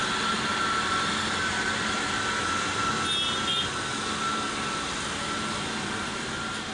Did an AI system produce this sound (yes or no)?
no